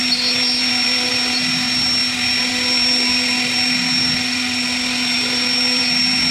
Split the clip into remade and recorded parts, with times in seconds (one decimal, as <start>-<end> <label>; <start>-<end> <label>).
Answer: 0.0-6.3 recorded